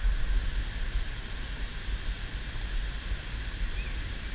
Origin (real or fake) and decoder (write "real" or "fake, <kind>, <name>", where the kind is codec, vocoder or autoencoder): real